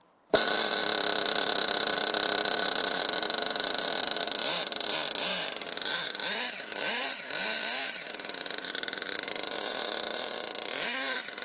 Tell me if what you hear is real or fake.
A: fake